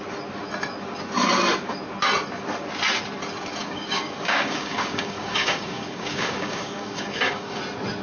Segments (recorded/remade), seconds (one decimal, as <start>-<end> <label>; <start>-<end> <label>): 0.0-3.6 recorded; 3.6-7.6 remade; 7.6-8.0 recorded